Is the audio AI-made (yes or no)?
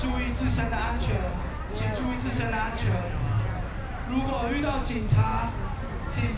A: no